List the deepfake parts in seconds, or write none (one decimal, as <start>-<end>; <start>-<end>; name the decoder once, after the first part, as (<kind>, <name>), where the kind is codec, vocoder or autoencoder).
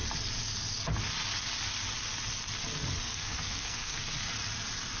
3.0-4.0 (codec, SNAC)